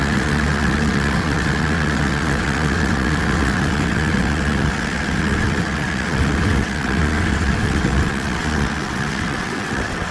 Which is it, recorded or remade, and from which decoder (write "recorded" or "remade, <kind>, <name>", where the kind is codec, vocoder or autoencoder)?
remade, vocoder, WaveNeXt